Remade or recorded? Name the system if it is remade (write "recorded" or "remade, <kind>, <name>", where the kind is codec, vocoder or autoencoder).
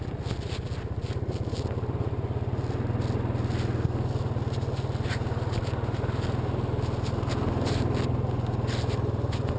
recorded